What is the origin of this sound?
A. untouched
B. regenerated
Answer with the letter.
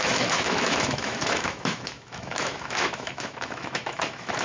B